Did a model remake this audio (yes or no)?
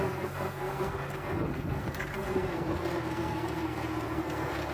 yes